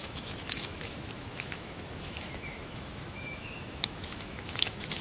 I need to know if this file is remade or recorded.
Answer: remade